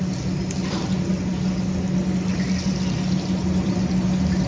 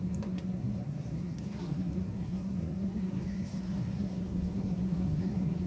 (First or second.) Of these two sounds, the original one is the first